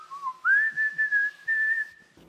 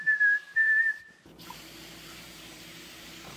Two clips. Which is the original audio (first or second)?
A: first